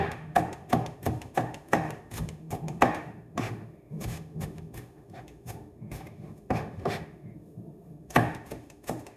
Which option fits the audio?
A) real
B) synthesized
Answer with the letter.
B